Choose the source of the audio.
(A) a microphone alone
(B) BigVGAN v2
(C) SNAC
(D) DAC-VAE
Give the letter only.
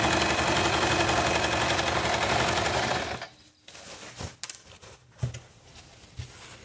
A